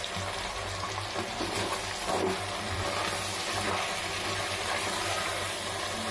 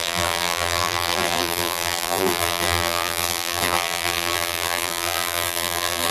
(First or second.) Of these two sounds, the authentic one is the first